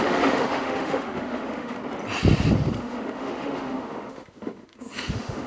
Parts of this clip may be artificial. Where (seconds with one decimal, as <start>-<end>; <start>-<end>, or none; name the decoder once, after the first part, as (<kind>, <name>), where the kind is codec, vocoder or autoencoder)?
0.0-1.8 (autoencoder, DAC-VAE); 2.8-5.5